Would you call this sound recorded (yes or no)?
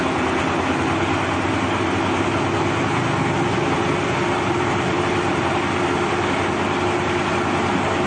yes